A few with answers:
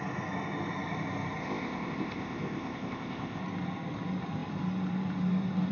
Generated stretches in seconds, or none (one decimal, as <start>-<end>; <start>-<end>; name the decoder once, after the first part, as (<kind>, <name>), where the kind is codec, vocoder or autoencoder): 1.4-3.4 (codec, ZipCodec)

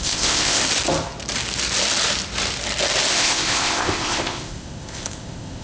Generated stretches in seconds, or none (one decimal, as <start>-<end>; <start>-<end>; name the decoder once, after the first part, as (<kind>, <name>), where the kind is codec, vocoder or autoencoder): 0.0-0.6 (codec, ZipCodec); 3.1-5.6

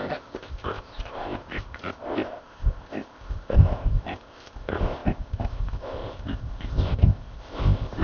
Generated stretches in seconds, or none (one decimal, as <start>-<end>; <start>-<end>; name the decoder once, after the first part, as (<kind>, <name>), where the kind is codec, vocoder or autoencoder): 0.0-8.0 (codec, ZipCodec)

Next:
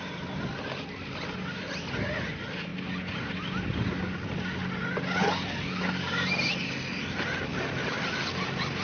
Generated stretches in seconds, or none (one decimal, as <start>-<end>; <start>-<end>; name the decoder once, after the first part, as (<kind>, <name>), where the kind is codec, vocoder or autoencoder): none